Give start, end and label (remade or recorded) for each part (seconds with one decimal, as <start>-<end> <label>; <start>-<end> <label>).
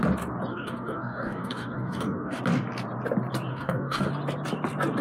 0.0-0.5 recorded; 0.5-2.4 remade; 2.4-3.5 recorded; 3.5-4.1 remade; 4.1-5.0 recorded